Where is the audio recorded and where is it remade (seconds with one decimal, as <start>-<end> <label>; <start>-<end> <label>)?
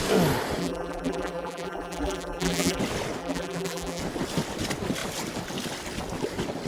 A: 0.0-0.6 recorded; 0.6-2.8 remade; 2.8-3.2 recorded; 3.2-4.0 remade; 4.0-6.7 recorded